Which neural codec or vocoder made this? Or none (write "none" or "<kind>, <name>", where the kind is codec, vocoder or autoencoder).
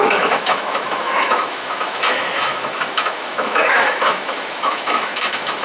autoencoder, DAC-VAE